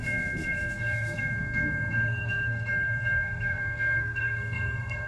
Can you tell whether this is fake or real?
fake